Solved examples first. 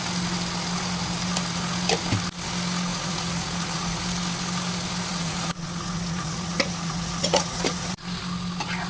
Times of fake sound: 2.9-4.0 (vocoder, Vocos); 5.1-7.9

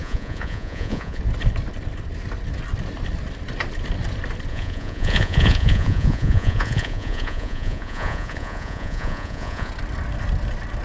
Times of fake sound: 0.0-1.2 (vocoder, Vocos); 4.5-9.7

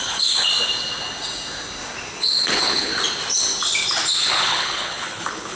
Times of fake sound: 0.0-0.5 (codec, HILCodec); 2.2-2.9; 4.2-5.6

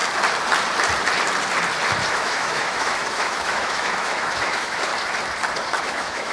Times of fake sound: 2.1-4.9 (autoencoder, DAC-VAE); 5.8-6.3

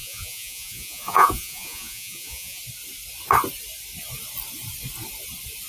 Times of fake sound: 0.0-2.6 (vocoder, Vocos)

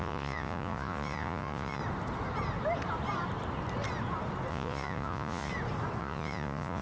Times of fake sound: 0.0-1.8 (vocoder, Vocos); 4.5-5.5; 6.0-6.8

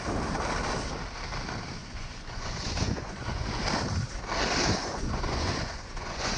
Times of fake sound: 1.8-3.6 (vocoder, Vocos); 4.8-6.4